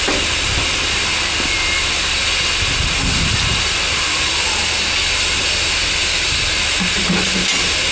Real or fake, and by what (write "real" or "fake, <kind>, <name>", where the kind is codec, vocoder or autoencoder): real